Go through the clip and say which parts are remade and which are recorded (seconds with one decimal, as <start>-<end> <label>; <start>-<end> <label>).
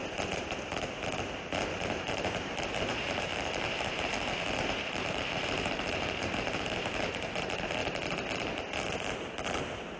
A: 0.0-1.7 recorded; 1.7-3.3 remade; 3.3-3.8 recorded; 3.8-7.8 remade; 7.8-10.0 recorded